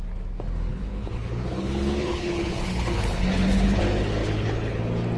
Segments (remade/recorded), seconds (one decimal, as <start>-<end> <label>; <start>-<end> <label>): 0.0-0.7 recorded; 0.7-3.8 remade; 3.8-4.2 recorded; 4.2-4.8 remade; 4.8-5.2 recorded